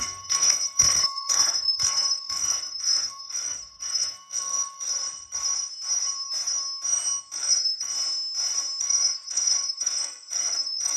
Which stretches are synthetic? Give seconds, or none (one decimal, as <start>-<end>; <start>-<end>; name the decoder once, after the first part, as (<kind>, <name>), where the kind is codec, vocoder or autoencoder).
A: 0.0-4.9 (codec, SNAC); 7.4-7.9; 8.8-11.0